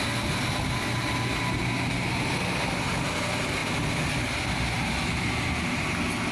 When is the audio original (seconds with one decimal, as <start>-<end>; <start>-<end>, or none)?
0.0-6.3